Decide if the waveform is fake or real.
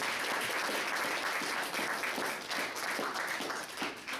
real